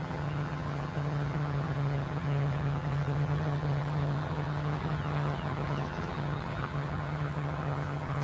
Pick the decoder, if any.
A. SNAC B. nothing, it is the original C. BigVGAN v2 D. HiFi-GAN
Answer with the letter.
D